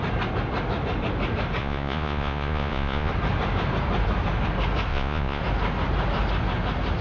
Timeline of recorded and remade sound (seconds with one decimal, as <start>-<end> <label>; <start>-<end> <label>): 0.0-1.6 recorded; 1.6-3.1 remade; 3.1-4.9 recorded; 4.9-5.4 remade; 5.4-7.0 recorded